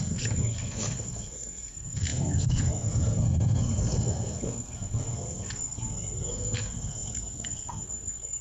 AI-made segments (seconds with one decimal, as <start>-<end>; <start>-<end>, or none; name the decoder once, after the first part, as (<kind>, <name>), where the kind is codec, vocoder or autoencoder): 0.0-8.4 (codec, SNAC)